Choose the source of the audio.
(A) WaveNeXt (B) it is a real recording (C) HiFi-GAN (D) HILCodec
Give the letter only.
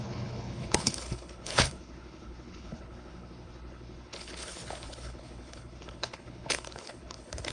D